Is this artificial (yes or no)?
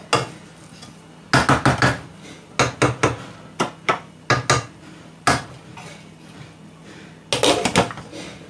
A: no